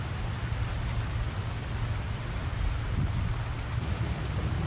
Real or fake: real